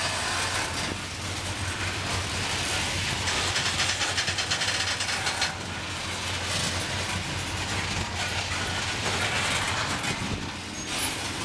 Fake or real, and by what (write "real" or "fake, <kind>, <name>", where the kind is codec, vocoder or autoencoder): real